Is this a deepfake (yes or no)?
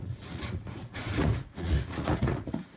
yes